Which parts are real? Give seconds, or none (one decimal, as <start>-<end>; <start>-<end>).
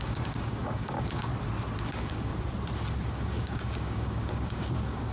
1.3-1.9; 2.3-3.1